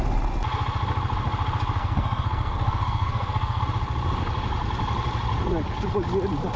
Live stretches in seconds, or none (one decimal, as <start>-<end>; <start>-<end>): 0.0-1.8; 3.6-6.6